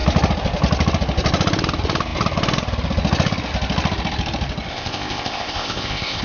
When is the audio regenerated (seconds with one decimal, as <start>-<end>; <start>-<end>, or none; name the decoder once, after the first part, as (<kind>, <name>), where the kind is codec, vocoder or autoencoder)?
4.7-6.2 (codec, ZipCodec)